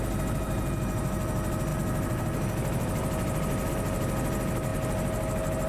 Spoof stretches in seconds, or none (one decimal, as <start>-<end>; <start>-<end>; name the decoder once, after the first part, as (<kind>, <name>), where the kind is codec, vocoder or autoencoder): none